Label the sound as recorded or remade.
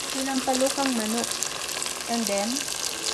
recorded